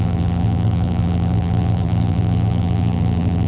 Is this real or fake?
fake